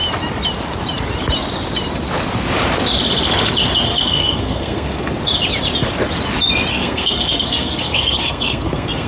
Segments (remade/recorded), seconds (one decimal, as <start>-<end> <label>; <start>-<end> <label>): 0.0-3.9 recorded; 3.9-5.1 remade; 5.1-6.7 recorded; 6.7-9.1 remade